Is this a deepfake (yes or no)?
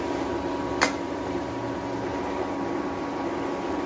no